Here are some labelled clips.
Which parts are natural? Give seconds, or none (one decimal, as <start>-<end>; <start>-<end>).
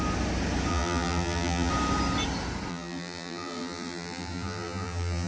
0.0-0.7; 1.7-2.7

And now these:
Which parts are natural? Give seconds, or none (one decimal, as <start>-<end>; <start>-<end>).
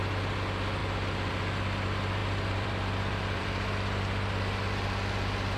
0.0-0.8; 1.3-2.2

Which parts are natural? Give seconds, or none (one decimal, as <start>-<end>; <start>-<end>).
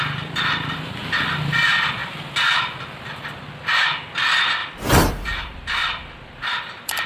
0.0-4.6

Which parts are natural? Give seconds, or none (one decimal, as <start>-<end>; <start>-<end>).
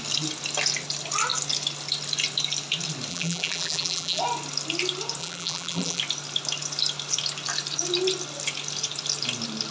0.0-3.1; 4.2-5.2; 6.0-9.7